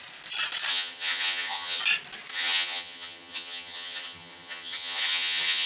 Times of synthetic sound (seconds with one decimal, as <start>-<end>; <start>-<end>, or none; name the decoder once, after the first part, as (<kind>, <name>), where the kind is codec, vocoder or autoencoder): 0.7-1.8 (vocoder, HiFi-GAN); 2.3-5.7